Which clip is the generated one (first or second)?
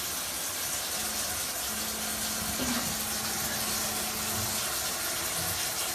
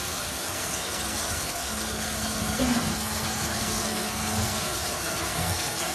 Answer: second